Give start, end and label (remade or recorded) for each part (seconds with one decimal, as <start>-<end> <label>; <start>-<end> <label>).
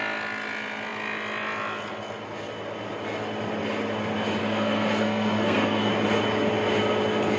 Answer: 0.0-4.4 recorded; 4.4-5.9 remade; 5.9-7.4 recorded